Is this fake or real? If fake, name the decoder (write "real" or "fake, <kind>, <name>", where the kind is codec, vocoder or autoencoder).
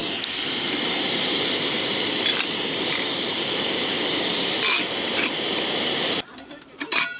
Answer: real